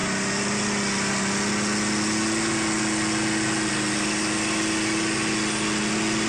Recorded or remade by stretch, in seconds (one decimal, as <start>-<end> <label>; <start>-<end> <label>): 0.0-6.3 recorded